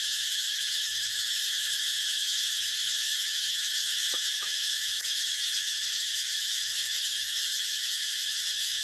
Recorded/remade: remade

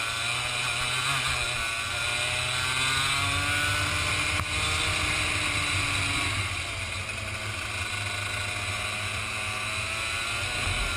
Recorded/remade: recorded